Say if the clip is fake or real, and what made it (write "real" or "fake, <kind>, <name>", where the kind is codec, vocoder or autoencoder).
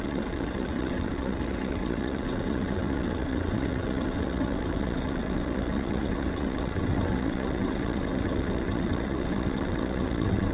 fake, vocoder, WaveNeXt